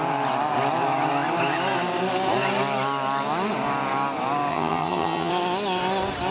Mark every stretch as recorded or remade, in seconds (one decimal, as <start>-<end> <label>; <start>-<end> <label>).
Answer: 0.0-4.5 recorded; 4.5-5.3 remade; 5.3-6.3 recorded